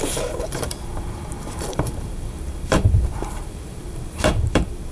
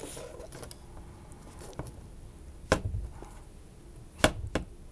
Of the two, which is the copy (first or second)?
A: first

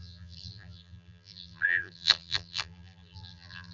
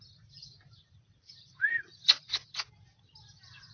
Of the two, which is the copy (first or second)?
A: first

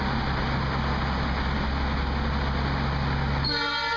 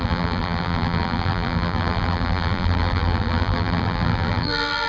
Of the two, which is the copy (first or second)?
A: second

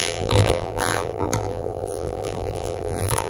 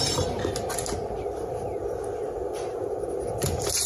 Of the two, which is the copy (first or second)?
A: first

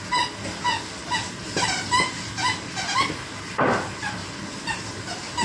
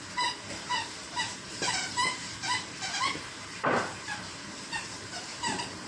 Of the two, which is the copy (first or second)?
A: second